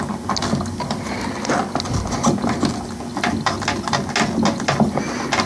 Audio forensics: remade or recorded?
recorded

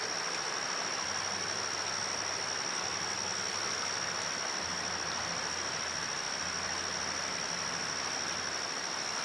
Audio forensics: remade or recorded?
recorded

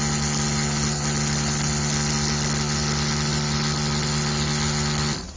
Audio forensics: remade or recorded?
recorded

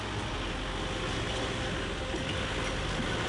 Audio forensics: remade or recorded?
recorded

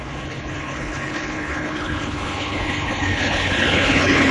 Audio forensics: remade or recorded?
remade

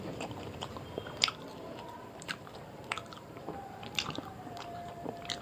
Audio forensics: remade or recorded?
remade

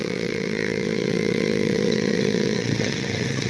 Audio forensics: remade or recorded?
remade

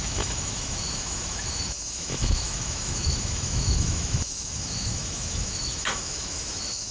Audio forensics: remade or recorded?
remade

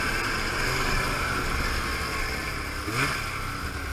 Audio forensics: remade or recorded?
recorded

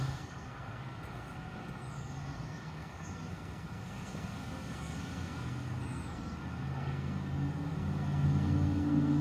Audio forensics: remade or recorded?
remade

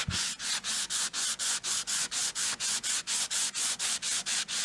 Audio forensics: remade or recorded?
remade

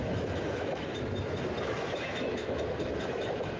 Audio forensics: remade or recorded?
remade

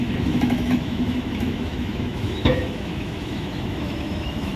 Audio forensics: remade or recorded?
remade